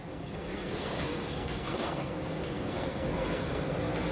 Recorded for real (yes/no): no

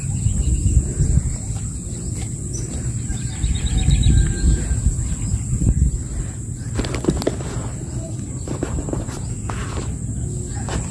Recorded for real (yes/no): yes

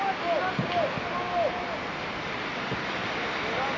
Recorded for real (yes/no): yes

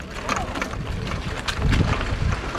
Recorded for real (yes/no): yes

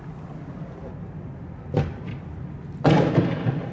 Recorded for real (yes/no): yes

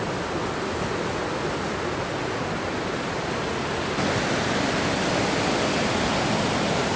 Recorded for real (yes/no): yes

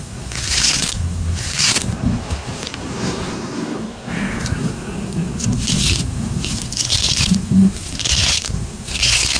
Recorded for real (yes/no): no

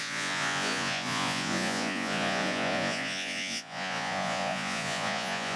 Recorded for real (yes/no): no